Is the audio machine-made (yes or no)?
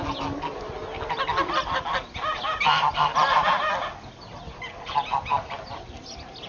no